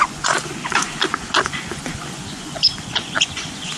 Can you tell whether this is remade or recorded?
remade